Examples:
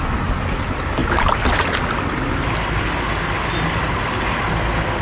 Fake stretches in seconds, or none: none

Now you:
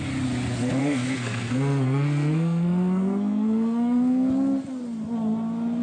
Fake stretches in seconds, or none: 0.8-4.3

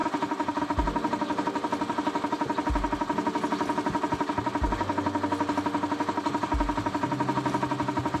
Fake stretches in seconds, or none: none

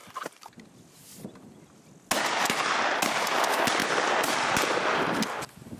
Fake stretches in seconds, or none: 3.8-4.5